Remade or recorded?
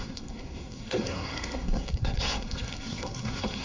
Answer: remade